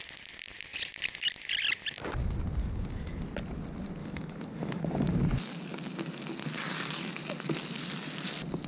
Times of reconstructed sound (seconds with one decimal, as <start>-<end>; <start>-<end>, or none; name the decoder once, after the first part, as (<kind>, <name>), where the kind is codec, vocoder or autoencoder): 2.6-3.2 (codec, DAC); 4.0-4.8

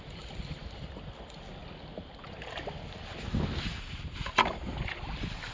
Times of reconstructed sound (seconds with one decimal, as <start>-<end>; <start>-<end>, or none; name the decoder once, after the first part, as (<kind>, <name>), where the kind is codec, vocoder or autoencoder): none

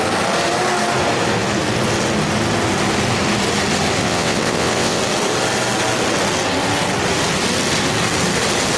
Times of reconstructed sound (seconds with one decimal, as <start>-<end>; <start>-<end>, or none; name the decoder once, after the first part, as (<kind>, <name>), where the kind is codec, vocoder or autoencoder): 4.0-5.0 (vocoder, WaveNeXt)

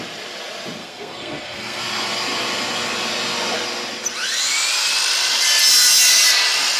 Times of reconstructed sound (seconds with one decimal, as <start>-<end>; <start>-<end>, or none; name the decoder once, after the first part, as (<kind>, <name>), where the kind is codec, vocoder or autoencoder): 0.8-1.8 (codec, SNAC)